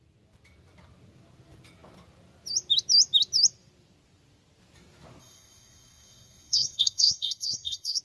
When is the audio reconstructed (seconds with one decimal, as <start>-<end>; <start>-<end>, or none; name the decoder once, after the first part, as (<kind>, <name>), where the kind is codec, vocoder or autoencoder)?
5.2-8.0 (codec, SNAC)